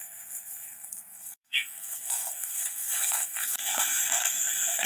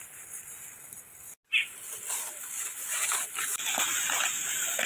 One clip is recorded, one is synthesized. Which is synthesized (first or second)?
first